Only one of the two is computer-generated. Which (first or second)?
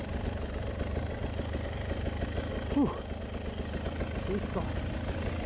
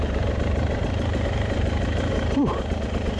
second